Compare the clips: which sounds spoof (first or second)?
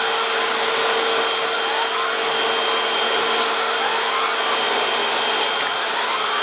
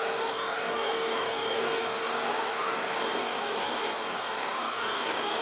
second